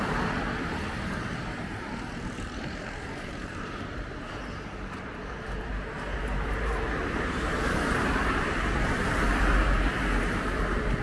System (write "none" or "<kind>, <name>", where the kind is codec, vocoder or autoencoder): vocoder, BigVGAN v2